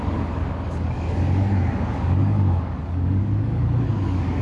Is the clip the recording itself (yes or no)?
no